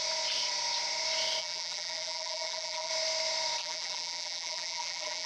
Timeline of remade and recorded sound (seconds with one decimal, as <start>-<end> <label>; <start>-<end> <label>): 0.0-1.4 recorded; 1.4-2.9 remade; 2.9-3.6 recorded; 3.6-5.3 remade